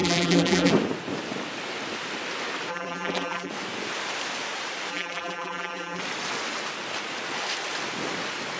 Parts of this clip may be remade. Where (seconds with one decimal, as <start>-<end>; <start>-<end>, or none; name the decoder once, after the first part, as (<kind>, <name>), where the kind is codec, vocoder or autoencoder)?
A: 0.0-0.7 (vocoder, BigVGAN v2); 2.7-3.5; 4.9-6.0